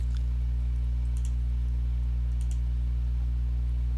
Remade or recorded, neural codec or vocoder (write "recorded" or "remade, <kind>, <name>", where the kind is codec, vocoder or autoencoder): recorded